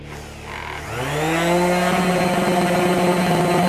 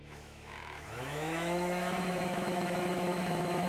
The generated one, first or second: second